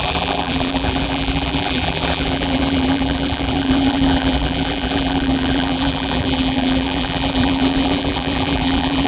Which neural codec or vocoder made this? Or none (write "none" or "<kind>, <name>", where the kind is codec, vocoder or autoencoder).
vocoder, BigVGAN v2